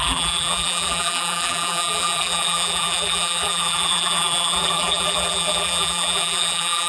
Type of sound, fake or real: fake